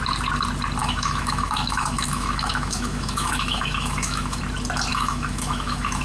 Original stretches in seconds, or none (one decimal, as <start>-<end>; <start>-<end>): 0.0-0.8; 4.4-4.9